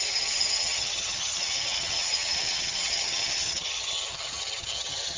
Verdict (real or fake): fake